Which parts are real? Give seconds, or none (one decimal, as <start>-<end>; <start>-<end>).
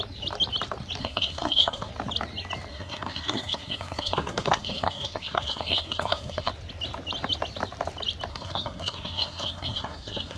0.0-1.0; 1.9-2.7; 6.5-8.3